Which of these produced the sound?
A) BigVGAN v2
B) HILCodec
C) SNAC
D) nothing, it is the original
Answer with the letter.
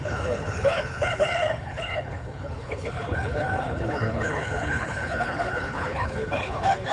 B